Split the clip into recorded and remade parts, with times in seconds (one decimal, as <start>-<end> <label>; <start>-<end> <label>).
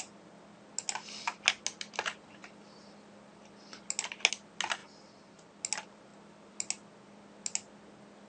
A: 0.0-8.3 recorded